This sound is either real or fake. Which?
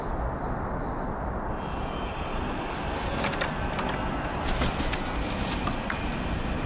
real